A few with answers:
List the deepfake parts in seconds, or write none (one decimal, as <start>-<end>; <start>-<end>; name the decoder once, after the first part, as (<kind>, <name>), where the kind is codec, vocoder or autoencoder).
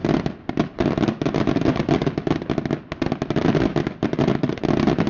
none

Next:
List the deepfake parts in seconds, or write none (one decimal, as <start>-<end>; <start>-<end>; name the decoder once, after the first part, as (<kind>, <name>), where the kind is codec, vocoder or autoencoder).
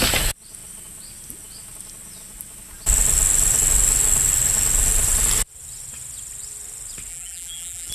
7.1-7.9 (vocoder, BigVGAN v2)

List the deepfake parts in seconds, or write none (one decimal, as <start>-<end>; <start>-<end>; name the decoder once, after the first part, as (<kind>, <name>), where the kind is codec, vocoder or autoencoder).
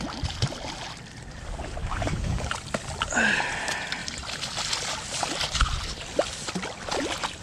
1.8-2.5 (codec, DAC)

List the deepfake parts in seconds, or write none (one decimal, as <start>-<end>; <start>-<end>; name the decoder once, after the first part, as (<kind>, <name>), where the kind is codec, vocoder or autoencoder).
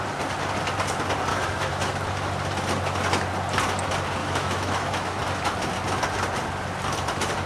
1.3-1.9 (autoencoder, DAC-VAE); 4.2-5.2